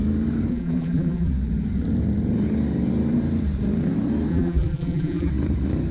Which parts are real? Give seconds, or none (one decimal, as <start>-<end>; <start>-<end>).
0.0-0.5; 1.3-4.3; 5.3-5.9